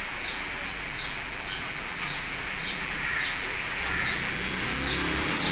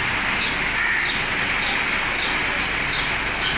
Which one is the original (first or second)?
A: second